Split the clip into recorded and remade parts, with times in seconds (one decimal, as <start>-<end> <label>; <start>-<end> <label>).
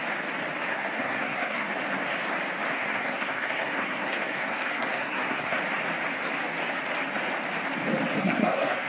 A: 0.0-0.7 recorded; 0.7-1.7 remade; 1.7-2.7 recorded; 2.7-5.6 remade; 5.6-8.2 recorded; 8.2-8.9 remade